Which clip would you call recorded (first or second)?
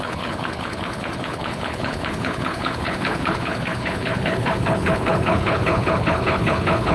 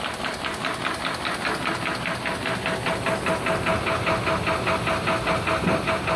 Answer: second